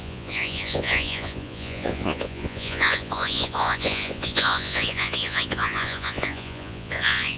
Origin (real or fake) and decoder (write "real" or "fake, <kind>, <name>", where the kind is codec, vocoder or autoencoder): fake, vocoder, Vocos